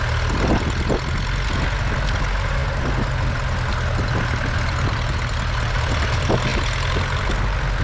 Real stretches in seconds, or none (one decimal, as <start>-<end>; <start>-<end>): 0.0-7.8

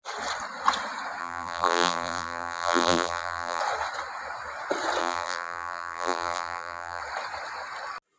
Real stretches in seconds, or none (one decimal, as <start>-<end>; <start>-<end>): 0.0-1.2; 3.6-5.0; 7.0-8.2

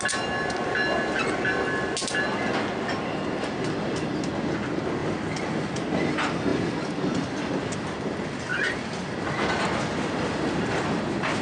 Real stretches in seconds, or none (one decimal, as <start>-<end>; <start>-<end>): 0.0-11.4

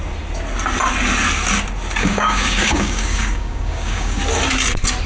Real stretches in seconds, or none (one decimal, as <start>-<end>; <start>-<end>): 0.0-2.0; 4.2-5.1

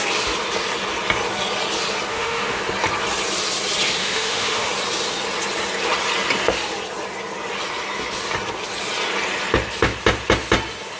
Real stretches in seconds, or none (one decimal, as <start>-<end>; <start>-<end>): 0.0-2.1; 2.6-4.0; 4.7-11.0

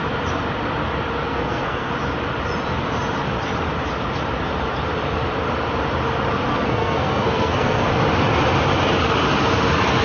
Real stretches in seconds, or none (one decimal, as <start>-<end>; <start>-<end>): 0.0-1.2; 1.9-6.5; 7.9-10.0

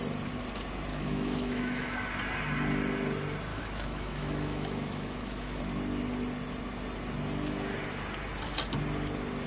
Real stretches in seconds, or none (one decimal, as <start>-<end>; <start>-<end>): 0.0-0.9; 2.1-3.5; 5.6-9.5

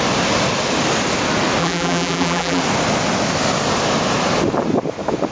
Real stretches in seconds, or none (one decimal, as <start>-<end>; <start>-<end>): 0.0-1.6; 2.6-5.3